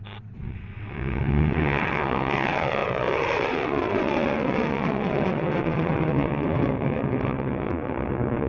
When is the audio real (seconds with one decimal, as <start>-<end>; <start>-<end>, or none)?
none